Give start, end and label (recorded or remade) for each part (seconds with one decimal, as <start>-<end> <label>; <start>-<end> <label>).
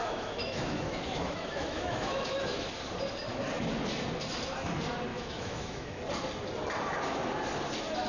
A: 0.0-2.7 remade; 2.7-5.1 recorded; 5.1-6.0 remade; 6.0-8.1 recorded